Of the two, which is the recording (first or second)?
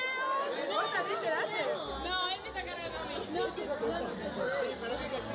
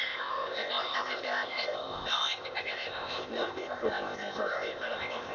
first